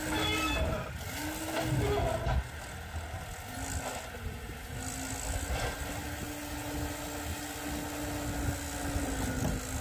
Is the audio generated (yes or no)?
no